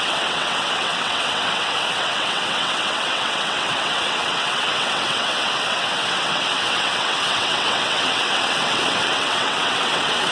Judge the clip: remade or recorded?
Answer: remade